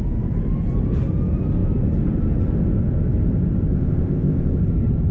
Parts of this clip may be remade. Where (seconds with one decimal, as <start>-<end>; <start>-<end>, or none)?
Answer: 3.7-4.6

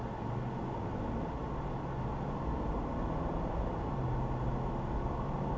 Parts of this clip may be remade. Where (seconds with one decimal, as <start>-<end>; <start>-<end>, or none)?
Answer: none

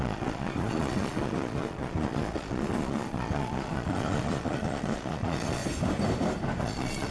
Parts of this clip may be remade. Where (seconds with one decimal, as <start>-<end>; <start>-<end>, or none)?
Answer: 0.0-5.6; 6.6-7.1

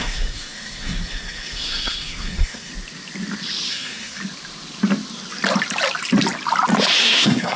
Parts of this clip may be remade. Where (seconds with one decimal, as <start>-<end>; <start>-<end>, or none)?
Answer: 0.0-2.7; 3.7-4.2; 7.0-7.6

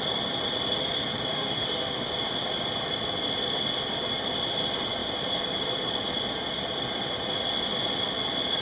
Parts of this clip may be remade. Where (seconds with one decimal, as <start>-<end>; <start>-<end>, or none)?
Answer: 1.3-2.0

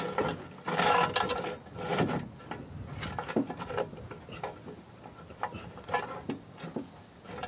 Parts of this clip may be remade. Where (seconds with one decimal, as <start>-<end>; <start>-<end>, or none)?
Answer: none

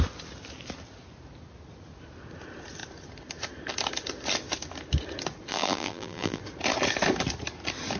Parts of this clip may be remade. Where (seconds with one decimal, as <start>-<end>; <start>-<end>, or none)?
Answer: 5.5-6.4